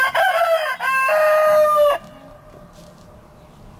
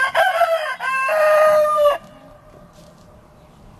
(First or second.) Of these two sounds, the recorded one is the first